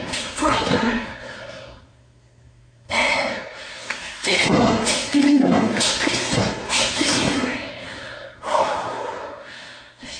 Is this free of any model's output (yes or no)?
no